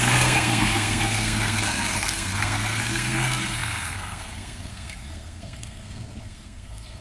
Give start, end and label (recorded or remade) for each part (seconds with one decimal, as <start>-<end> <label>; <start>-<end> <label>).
0.0-7.0 remade

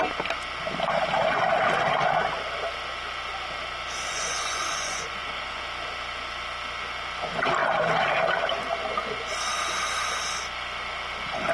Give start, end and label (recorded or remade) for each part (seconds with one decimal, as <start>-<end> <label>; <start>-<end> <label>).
0.0-4.1 recorded; 4.1-5.6 remade; 5.6-11.5 recorded

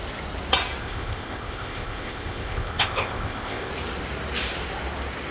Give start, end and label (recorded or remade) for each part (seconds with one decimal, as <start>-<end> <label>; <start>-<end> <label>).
0.0-0.8 recorded; 0.8-3.7 remade; 3.7-5.3 recorded

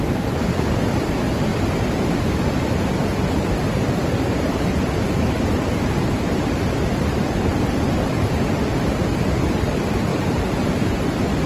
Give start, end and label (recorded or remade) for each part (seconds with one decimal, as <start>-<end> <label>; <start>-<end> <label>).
0.0-1.5 remade; 1.5-3.3 recorded; 3.3-10.1 remade; 10.1-10.7 recorded; 10.7-11.5 remade

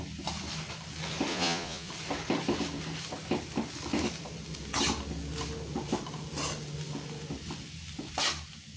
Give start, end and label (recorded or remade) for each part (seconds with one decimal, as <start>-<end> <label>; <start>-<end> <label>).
0.0-1.3 recorded; 1.3-1.9 remade; 1.9-8.8 recorded

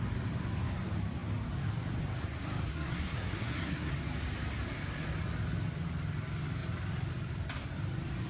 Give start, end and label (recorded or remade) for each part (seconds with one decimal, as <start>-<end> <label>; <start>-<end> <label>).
0.0-2.7 recorded; 2.7-3.9 remade; 3.9-8.3 recorded